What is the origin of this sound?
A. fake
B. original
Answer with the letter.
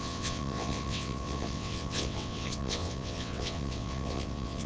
A